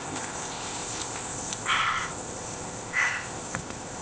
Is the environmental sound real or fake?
fake